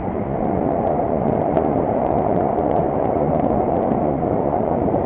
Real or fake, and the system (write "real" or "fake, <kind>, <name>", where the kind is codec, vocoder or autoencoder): fake, vocoder, Vocos